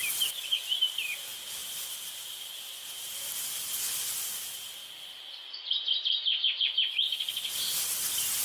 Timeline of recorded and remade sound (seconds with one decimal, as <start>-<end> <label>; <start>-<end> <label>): 0.0-1.6 recorded; 1.6-2.7 remade; 2.7-8.4 recorded

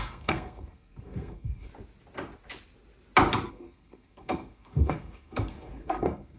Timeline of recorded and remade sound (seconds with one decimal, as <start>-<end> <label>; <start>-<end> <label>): 0.0-1.7 remade; 1.7-3.5 recorded; 3.5-6.4 remade

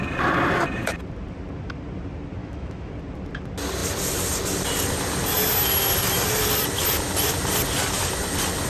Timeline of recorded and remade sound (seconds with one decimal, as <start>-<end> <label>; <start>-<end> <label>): 0.0-2.4 recorded; 2.4-2.9 remade; 2.9-8.7 recorded

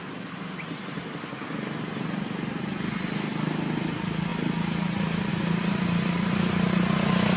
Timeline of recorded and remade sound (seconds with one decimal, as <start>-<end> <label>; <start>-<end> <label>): 0.0-4.3 recorded; 4.3-5.3 remade; 5.3-7.4 recorded

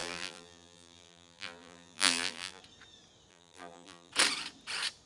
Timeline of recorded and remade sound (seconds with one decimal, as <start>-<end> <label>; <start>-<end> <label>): 0.0-2.6 remade; 2.6-3.3 recorded; 3.3-4.1 remade; 4.1-5.1 recorded

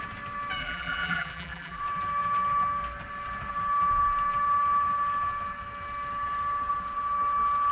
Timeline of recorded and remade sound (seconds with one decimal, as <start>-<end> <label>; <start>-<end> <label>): 0.0-0.6 recorded; 0.6-1.8 remade; 1.8-7.7 recorded

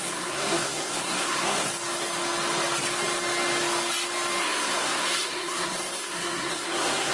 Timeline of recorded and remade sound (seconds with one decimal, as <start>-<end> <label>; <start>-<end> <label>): 0.0-1.7 remade; 1.7-4.4 recorded; 4.4-7.1 remade

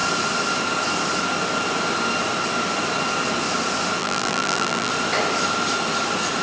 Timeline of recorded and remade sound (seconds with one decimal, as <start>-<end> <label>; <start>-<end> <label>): 0.0-4.0 recorded; 4.0-4.9 remade; 4.9-6.4 recorded